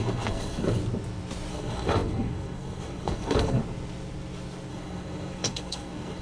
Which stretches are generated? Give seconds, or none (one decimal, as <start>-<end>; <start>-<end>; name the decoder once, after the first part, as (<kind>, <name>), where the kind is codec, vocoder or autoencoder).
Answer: 0.0-0.8 (codec, SNAC); 1.5-3.6; 4.7-6.2